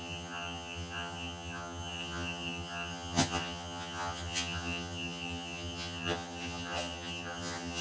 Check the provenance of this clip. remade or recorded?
remade